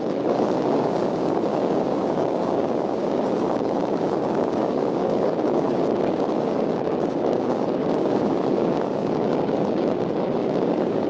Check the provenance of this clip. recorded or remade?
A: remade